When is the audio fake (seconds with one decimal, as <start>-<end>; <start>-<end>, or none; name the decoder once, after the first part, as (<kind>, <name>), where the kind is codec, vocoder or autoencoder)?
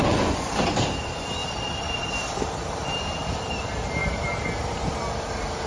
0.0-0.5 (vocoder, Vocos)